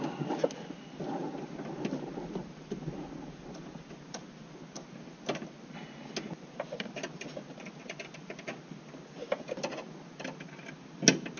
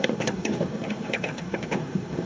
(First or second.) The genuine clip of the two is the first